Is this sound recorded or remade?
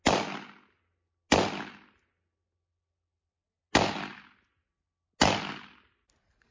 recorded